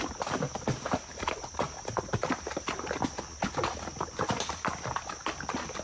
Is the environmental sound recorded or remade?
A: recorded